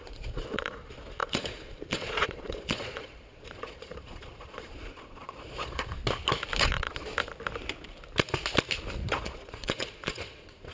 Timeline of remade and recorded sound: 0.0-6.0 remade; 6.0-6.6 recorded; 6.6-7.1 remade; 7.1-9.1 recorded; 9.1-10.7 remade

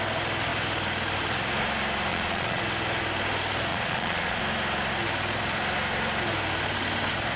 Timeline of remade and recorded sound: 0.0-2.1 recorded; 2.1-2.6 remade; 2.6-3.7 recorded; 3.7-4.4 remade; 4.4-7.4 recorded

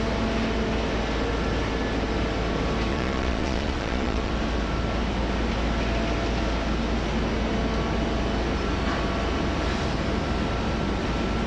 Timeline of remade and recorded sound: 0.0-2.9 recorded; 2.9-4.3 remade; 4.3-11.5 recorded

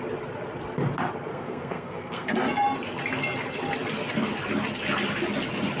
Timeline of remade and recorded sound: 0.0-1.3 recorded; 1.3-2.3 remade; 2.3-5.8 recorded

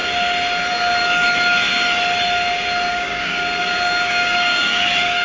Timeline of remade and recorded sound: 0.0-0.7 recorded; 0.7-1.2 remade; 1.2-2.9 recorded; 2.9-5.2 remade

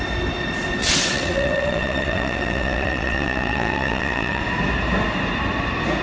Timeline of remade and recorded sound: 0.0-0.8 recorded; 0.8-4.4 remade; 4.4-6.0 recorded